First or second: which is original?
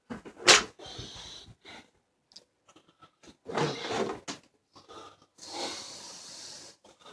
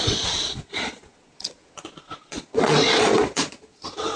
first